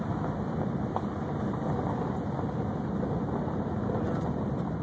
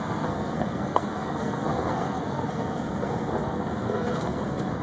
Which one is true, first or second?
first